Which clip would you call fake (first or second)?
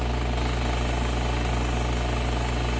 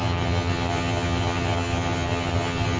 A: second